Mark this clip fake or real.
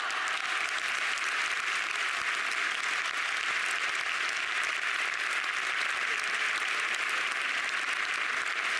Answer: real